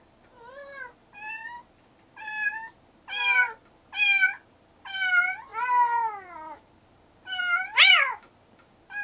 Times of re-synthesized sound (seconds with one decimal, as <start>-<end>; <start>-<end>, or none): none